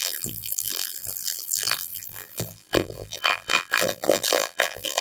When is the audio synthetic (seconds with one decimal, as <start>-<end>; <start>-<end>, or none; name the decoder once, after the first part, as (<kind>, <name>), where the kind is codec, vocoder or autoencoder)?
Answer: 0.0-5.0 (vocoder, BigVGAN v2)